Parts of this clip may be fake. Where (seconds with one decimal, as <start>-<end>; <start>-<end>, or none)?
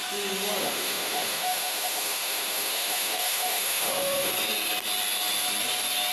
0.6-4.3